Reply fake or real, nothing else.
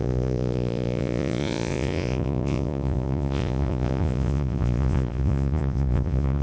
fake